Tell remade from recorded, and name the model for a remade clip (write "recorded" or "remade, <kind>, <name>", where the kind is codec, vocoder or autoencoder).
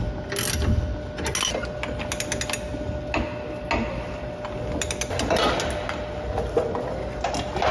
recorded